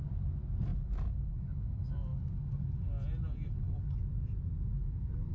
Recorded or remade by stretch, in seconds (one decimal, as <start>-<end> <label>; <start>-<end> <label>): 0.0-5.3 recorded